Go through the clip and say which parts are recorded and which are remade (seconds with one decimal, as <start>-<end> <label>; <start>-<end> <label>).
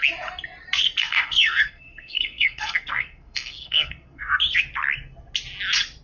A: 0.0-1.0 recorded; 1.0-4.4 remade; 4.4-6.0 recorded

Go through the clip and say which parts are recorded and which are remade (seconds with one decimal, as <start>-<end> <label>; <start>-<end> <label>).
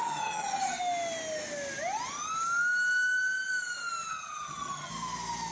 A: 0.0-0.8 remade; 0.8-4.1 recorded; 4.1-4.9 remade; 4.9-5.5 recorded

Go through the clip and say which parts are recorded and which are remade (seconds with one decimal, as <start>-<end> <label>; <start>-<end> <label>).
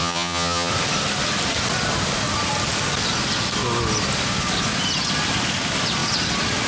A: 0.0-0.7 remade; 0.7-6.7 recorded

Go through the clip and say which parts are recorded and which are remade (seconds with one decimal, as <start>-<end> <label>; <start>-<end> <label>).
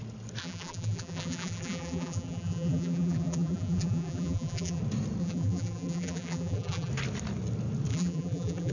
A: 0.0-0.4 recorded; 0.4-4.8 remade; 4.8-5.2 recorded; 5.2-6.9 remade; 6.9-7.9 recorded; 7.9-8.7 remade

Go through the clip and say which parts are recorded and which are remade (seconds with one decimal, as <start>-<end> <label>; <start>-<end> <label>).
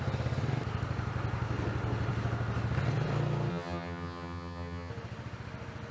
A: 0.0-3.5 recorded; 3.5-4.9 remade; 4.9-5.9 recorded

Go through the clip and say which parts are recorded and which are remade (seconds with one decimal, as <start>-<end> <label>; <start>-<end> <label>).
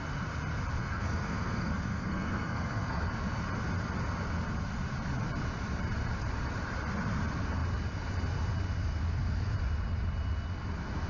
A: 0.0-0.8 recorded; 0.8-3.1 remade; 3.1-11.1 recorded